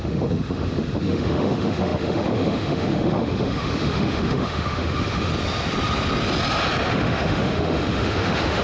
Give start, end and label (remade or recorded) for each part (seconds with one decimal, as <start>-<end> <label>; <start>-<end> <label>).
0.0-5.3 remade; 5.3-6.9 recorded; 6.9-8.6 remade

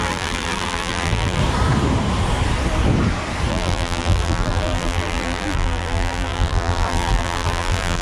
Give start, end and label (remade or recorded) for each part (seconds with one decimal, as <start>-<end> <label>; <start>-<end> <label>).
0.0-1.4 remade; 1.4-3.5 recorded; 3.5-8.0 remade

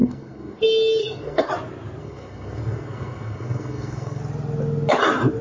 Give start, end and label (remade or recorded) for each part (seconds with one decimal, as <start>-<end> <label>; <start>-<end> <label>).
0.0-0.6 remade; 0.6-1.0 recorded; 1.0-1.5 remade; 1.5-2.0 recorded; 2.0-4.2 remade; 4.2-5.4 recorded

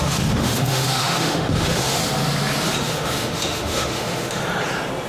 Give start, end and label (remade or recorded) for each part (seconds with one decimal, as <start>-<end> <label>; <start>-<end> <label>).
0.0-2.0 remade; 2.0-2.8 recorded; 2.8-4.4 remade; 4.4-5.1 recorded